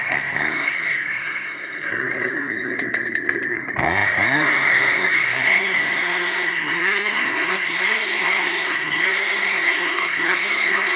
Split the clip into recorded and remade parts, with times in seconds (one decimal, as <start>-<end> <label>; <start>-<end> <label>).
0.0-11.0 remade